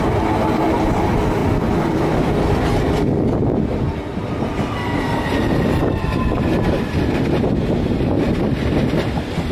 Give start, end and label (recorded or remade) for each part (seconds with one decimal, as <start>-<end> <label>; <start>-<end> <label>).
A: 0.0-9.5 recorded